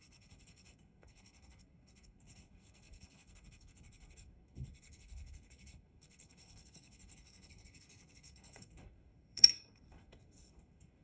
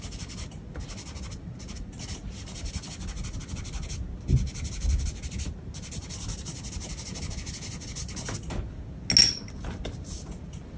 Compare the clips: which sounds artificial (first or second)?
first